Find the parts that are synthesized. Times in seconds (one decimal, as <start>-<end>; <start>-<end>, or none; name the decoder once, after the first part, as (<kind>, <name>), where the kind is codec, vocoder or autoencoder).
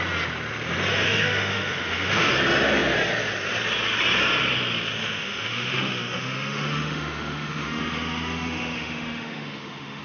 0.9-2.3 (autoencoder, DAC-VAE); 5.0-10.0